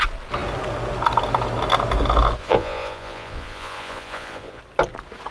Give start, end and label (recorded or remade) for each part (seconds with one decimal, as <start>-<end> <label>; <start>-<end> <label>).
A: 0.0-2.4 recorded; 2.4-4.6 remade; 4.6-5.3 recorded